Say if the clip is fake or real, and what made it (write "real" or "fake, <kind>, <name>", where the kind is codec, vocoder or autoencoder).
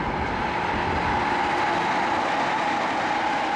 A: real